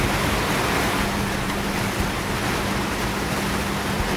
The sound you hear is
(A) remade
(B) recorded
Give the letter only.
B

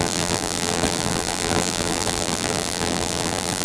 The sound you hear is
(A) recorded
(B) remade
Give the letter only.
B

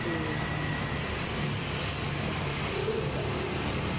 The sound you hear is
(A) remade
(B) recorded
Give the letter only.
B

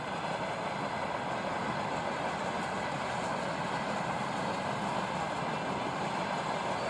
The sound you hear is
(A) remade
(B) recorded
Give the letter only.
B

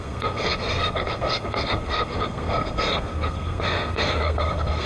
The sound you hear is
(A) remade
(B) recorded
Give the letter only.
A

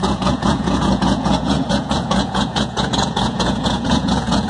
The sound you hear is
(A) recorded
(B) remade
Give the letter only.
B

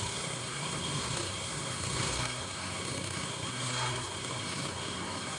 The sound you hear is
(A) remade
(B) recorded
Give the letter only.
A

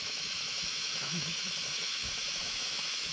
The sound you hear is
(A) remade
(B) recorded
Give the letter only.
A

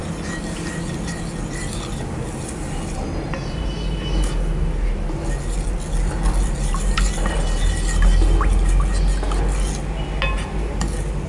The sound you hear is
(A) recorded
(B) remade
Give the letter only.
A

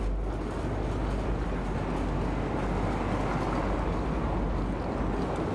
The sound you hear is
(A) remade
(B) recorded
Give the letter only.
B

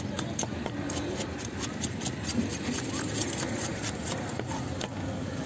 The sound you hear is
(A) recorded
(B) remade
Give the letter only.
A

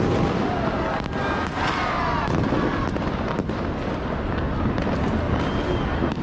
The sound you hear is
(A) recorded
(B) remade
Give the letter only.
A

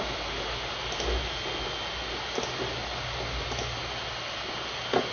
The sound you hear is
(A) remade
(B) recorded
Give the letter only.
B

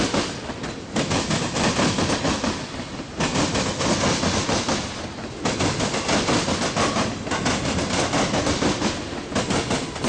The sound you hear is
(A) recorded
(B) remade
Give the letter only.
A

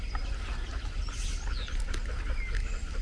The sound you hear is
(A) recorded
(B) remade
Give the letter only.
A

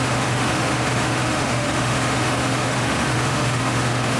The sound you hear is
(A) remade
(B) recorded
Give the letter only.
A